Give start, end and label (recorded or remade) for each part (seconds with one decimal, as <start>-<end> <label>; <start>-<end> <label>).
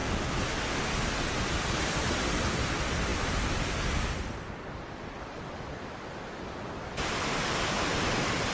0.0-8.5 recorded